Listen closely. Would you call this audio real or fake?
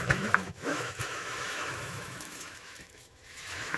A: fake